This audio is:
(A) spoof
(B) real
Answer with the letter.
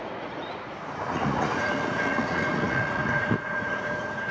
A